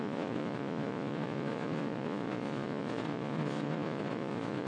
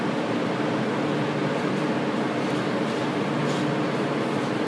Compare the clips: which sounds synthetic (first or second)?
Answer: first